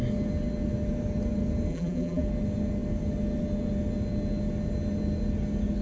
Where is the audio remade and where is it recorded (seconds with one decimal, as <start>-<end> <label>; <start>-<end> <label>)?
0.0-1.7 recorded; 1.7-2.2 remade; 2.2-5.8 recorded